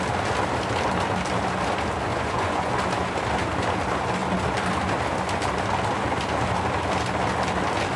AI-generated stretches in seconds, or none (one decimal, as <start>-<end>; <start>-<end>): 2.1-2.7